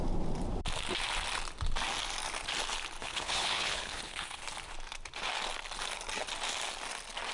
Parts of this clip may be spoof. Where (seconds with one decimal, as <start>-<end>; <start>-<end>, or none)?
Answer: 3.0-4.4